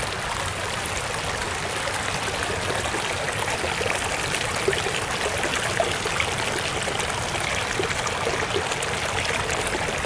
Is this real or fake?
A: real